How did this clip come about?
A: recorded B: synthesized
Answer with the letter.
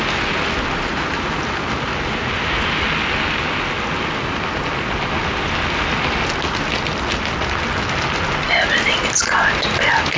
A